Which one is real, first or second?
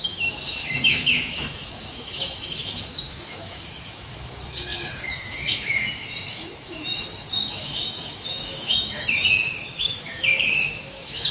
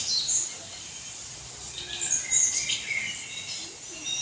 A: second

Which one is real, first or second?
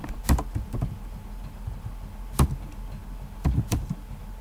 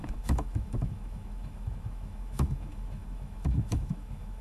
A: first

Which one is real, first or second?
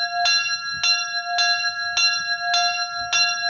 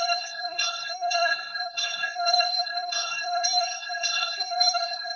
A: first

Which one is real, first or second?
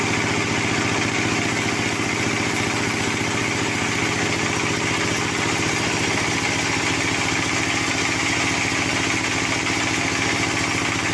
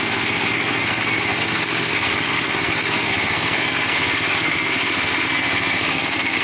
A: first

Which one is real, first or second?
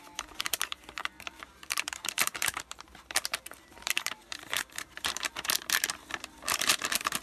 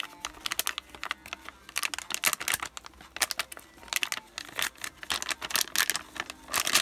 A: second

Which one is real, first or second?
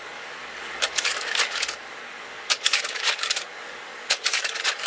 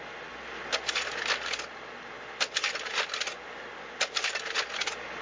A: second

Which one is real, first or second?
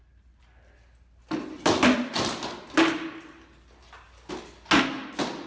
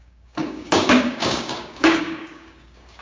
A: first